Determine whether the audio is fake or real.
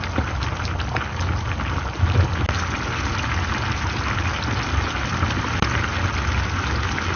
real